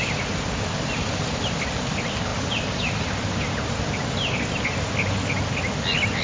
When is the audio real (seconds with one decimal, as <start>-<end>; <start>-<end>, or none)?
0.0-6.2

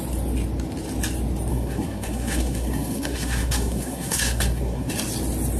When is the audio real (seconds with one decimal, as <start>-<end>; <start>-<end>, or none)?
0.0-1.5; 4.9-5.6

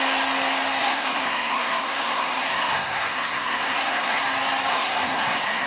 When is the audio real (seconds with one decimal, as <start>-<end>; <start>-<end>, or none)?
0.0-0.8; 4.2-4.7